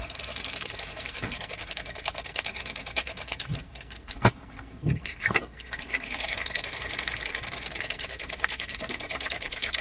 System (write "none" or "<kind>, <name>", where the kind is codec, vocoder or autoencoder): codec, SNAC